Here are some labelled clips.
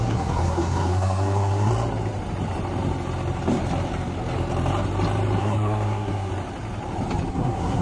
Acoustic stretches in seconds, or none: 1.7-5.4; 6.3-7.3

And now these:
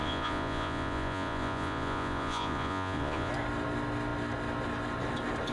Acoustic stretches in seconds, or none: 3.3-5.5

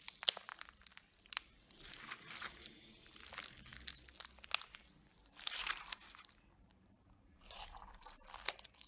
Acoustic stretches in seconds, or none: 0.0-5.1; 7.8-8.9

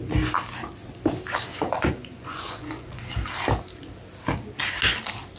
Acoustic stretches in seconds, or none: 0.0-1.5; 3.0-5.4

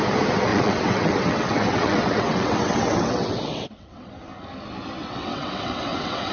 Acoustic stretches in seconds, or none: 0.0-0.5; 4.1-5.0